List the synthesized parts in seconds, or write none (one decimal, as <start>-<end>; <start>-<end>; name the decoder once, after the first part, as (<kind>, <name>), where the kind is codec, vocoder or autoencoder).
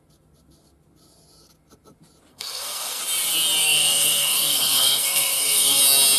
2.3-3.0 (codec, SNAC); 3.6-5.8